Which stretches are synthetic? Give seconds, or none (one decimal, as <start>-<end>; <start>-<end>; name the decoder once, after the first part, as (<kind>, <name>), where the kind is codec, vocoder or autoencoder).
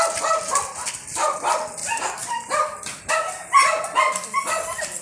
0.0-1.8 (vocoder, BigVGAN v2); 3.1-5.0